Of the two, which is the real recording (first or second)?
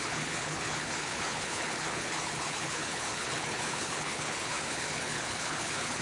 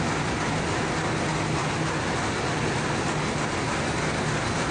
second